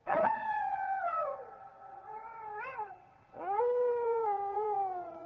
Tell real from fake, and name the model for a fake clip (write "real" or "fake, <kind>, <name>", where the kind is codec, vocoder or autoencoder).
fake, vocoder, WaveNeXt